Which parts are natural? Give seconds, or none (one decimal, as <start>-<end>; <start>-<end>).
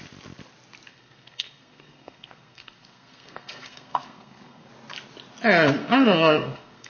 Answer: 0.0-0.9; 4.7-5.8